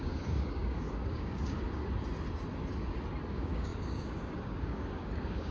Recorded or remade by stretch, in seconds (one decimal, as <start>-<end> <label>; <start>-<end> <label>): 0.0-1.8 remade; 1.8-3.3 recorded; 3.3-5.5 remade